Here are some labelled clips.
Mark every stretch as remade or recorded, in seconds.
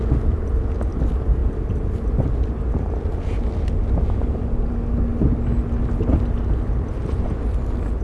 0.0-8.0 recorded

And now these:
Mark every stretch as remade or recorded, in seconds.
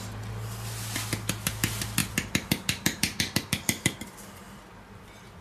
0.0-2.0 recorded; 2.0-5.4 remade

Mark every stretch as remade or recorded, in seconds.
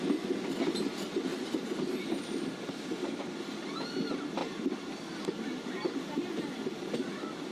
0.0-1.3 recorded; 1.3-2.2 remade; 2.2-7.5 recorded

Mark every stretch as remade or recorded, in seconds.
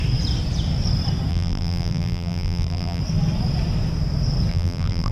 0.0-1.3 recorded; 1.3-3.0 remade; 3.0-4.5 recorded; 4.5-5.1 remade